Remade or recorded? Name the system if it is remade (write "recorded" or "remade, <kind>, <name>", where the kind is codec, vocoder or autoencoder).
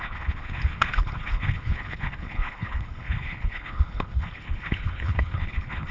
remade, codec, HILCodec